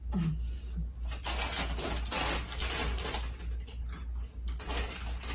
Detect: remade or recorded recorded